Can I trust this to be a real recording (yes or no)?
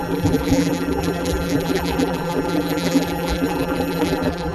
no